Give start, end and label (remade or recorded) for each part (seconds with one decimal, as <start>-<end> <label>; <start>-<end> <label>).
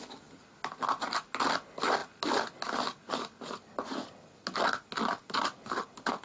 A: 0.0-6.2 recorded